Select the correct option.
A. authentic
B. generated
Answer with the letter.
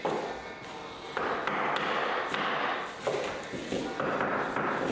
A